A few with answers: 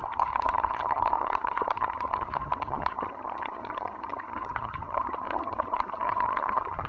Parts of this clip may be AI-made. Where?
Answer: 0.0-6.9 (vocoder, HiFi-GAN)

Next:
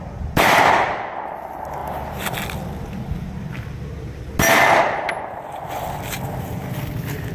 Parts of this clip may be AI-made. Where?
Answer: none

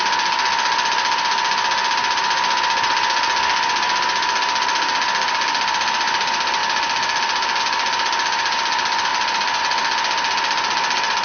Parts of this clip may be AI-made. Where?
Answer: 9.1-9.6 (vocoder, BigVGAN v2)

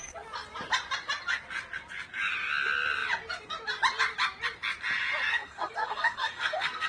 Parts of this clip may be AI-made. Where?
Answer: 5.3-6.9 (codec, SNAC)

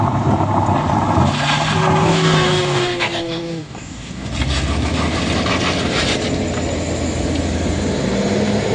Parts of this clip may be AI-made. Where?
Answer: 2.0-4.3 (codec, DAC)

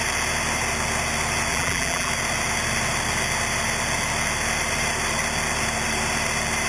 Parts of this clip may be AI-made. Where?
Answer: 1.5-2.1 (vocoder, BigVGAN v2)